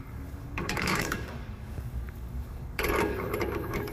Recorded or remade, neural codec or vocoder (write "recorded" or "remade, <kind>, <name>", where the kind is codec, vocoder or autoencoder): remade, codec, DAC